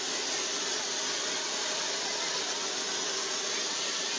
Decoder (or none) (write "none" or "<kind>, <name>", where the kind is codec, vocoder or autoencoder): none